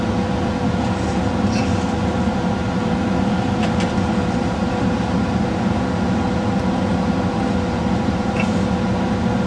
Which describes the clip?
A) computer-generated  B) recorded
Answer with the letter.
B